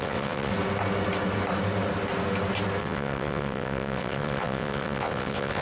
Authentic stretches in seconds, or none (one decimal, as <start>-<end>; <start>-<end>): 0.5-2.8